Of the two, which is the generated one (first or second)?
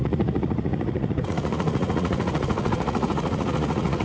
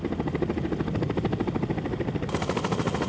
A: first